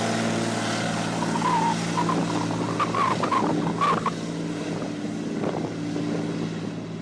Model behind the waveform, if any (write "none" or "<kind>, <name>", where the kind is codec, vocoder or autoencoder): none